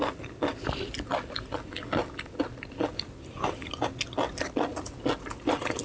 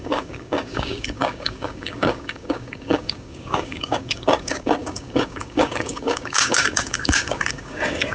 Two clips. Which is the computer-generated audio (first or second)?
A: second